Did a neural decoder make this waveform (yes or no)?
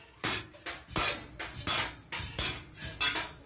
no